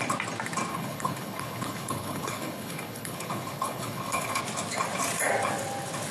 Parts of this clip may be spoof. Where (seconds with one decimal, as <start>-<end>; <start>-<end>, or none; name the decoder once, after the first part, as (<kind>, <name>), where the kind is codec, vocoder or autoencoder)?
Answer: 0.7-4.4 (codec, HILCodec)